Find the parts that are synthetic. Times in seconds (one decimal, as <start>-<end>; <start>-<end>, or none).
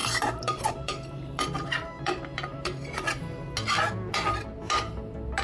0.0-3.2